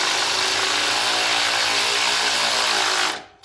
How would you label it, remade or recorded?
recorded